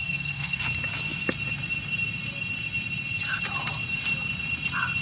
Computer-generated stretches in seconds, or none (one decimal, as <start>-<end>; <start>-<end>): 0.0-0.6